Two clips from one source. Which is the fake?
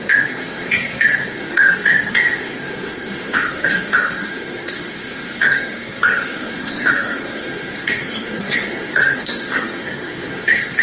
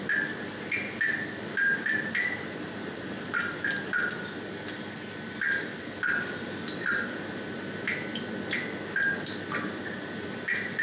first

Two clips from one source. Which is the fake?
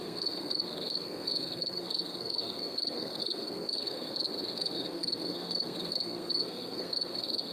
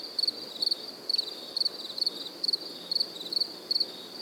first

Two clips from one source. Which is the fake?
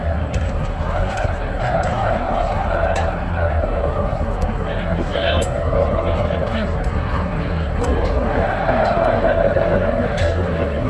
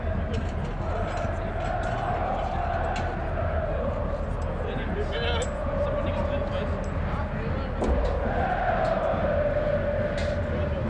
first